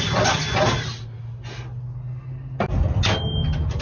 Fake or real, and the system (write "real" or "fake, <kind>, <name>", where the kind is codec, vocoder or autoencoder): real